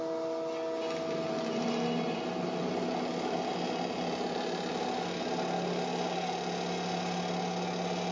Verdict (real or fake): real